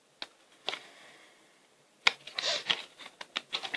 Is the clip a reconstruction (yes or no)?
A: no